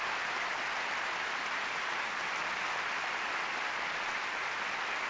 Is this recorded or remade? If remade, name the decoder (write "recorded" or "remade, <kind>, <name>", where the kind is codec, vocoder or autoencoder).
recorded